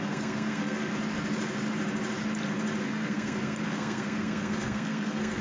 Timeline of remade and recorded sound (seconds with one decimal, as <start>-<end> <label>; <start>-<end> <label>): 0.0-0.9 remade; 0.9-2.8 recorded; 2.8-5.4 remade